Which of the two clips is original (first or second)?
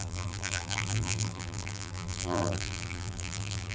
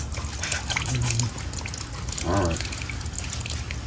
second